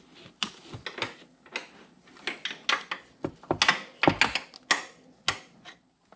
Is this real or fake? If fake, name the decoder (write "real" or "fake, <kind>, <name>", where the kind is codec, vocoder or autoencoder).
real